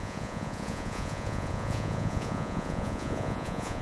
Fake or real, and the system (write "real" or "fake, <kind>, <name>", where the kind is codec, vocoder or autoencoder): fake, vocoder, Vocos